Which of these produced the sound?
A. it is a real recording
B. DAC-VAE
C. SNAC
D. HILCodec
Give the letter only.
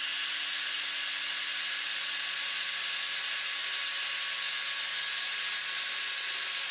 A